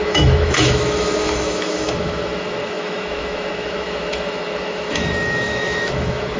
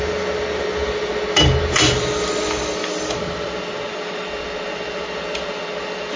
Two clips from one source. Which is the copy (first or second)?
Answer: first